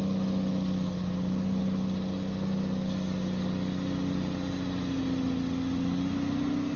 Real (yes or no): yes